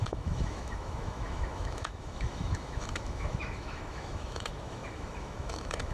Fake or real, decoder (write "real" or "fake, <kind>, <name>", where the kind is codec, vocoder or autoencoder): fake, autoencoder, DAC-VAE